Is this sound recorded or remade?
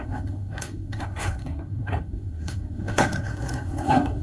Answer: remade